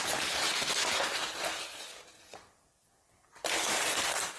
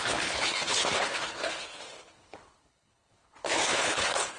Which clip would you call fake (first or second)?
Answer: second